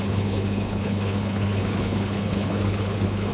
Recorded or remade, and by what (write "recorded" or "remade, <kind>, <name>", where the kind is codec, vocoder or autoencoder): remade, codec, HILCodec